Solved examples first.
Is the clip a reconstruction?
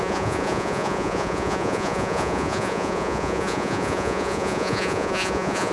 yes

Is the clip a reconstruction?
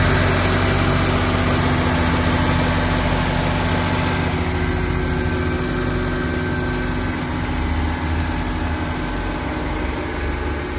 no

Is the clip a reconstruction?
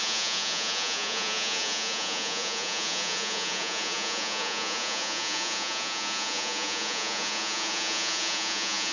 yes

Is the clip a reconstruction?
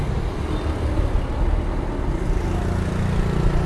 no